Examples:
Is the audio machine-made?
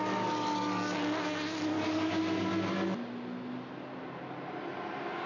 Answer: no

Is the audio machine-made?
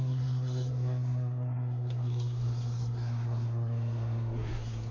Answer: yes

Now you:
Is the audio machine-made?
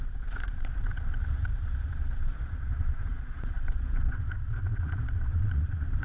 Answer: yes